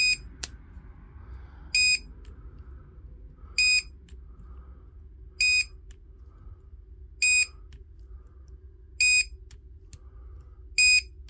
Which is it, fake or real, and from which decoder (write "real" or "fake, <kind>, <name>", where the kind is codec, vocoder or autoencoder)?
real